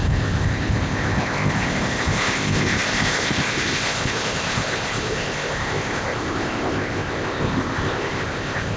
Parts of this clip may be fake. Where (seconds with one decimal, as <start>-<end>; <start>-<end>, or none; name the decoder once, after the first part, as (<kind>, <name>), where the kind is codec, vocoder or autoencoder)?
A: 0.0-8.8 (codec, ZipCodec)